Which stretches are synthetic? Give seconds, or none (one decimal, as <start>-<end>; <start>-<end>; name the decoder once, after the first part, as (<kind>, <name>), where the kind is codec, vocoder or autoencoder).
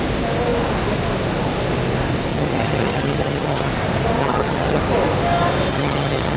2.3-3.7 (vocoder, HiFi-GAN); 4.2-4.8; 5.7-6.4